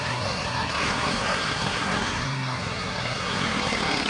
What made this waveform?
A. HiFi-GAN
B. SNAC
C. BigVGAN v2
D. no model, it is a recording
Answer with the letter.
B